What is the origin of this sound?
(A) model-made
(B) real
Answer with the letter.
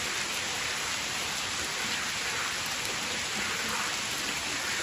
B